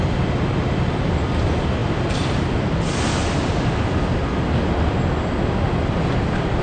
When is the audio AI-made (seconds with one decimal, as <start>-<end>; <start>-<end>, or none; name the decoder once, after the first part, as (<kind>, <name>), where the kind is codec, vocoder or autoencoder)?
none